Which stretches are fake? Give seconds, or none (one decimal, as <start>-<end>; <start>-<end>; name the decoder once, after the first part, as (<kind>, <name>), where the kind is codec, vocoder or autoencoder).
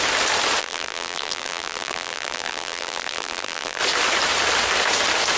0.6-3.8 (vocoder, BigVGAN v2)